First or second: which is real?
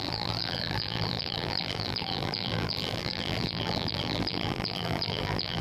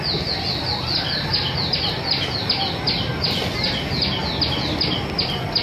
second